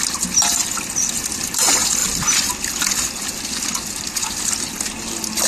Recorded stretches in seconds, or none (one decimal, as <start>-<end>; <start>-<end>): 0.0-5.5